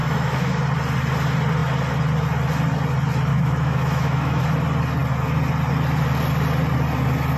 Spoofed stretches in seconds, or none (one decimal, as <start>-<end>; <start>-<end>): 0.0-0.6; 3.3-4.4